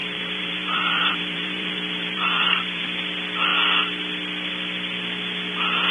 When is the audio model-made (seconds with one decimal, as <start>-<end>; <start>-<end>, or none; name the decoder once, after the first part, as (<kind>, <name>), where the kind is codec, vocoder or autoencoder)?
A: 0.0-2.8 (vocoder, BigVGAN v2)